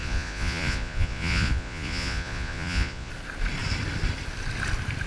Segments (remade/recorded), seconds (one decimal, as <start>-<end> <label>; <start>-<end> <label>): 0.0-3.1 remade; 3.1-5.1 recorded